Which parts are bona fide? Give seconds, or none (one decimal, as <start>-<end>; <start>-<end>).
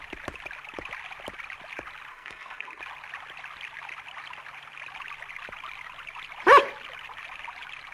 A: 0.0-2.1; 2.8-7.9